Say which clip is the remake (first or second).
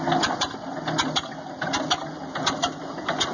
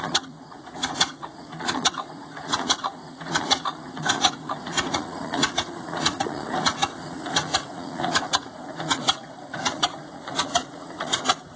second